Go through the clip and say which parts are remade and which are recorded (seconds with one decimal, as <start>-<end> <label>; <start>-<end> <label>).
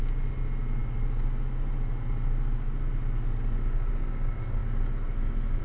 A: 0.0-5.6 recorded